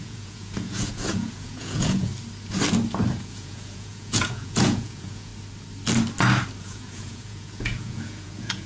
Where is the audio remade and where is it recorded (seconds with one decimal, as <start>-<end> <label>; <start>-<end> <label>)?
0.0-2.1 remade; 2.1-3.2 recorded; 3.2-5.3 remade; 5.3-6.6 recorded; 6.6-8.7 remade

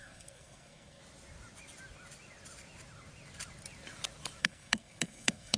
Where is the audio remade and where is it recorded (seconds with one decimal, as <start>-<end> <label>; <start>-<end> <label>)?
0.0-1.0 remade; 1.0-4.4 recorded; 4.4-5.6 remade

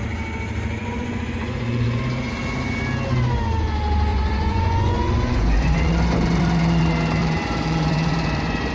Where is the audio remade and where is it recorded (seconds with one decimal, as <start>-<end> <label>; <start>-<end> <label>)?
0.0-0.8 recorded; 0.8-2.0 remade; 2.0-4.1 recorded; 4.1-6.8 remade; 6.8-7.2 recorded; 7.2-8.7 remade

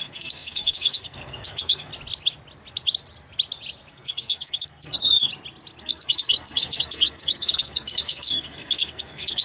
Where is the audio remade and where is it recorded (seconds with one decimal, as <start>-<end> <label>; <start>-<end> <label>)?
0.0-1.9 remade; 1.9-3.9 recorded; 3.9-5.3 remade; 5.3-5.8 recorded; 5.8-9.4 remade